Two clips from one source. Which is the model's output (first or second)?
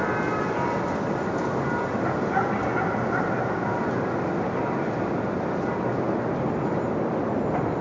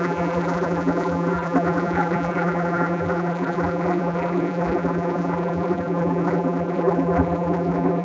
second